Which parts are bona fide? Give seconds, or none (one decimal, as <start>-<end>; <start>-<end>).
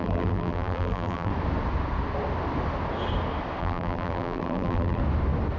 1.3-3.6; 5.0-5.6